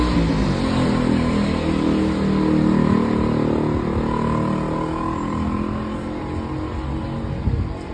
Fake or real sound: real